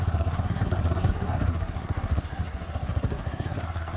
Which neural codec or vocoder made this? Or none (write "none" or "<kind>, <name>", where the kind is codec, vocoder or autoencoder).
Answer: codec, SNAC